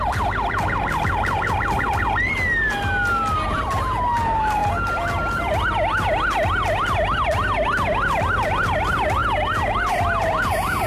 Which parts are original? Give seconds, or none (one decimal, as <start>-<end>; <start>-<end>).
0.0-10.9